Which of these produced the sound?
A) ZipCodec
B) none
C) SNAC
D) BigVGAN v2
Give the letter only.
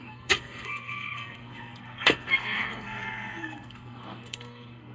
C